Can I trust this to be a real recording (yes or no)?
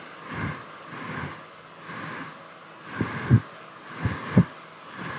yes